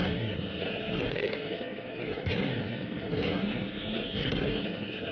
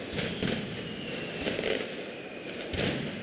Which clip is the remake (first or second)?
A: first